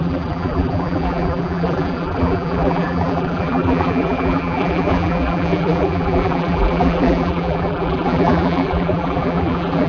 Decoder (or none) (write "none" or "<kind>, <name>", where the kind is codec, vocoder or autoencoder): vocoder, BigVGAN v2